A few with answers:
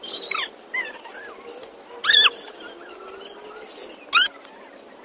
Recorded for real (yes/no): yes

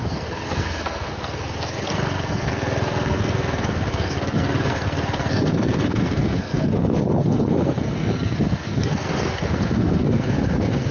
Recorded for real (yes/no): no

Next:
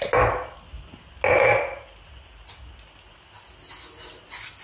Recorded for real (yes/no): yes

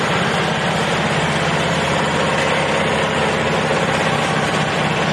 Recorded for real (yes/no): yes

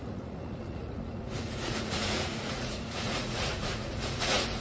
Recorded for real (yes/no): no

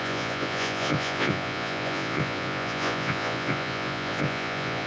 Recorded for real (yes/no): no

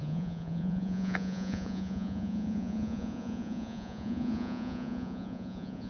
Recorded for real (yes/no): no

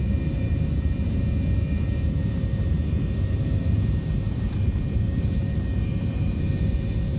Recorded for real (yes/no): no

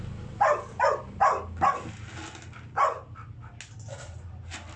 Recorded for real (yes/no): yes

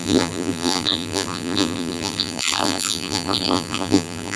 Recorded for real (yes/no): no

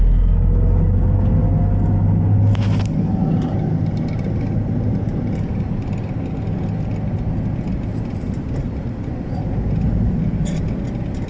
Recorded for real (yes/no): yes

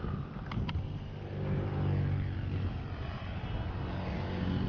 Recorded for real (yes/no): yes